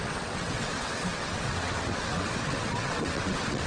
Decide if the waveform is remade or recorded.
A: remade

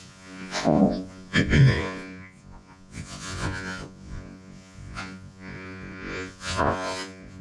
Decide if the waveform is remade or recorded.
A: remade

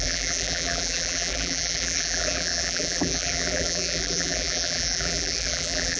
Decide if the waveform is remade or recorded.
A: remade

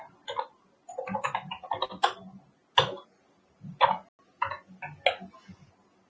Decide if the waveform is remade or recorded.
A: recorded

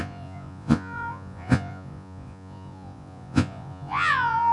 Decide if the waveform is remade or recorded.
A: remade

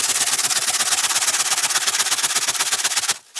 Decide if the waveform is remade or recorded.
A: recorded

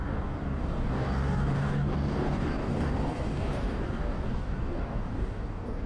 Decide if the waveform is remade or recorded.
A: remade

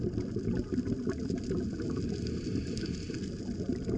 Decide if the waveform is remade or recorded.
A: recorded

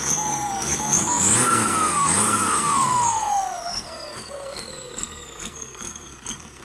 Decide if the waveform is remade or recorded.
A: remade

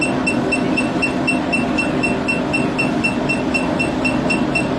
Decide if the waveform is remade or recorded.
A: recorded